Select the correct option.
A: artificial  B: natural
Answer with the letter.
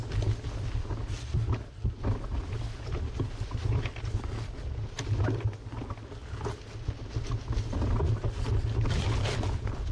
B